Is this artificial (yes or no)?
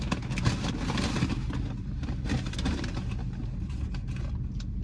no